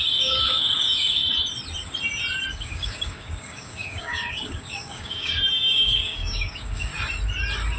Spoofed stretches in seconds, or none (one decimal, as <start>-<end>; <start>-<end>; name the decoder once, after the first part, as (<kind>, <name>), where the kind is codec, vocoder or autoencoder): 0.0-1.2 (codec, DAC); 2.5-6.9